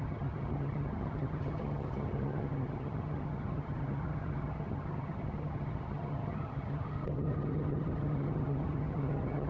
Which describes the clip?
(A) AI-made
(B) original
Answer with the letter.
A